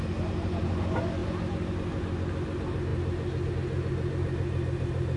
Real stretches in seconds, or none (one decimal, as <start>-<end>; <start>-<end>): 0.0-5.2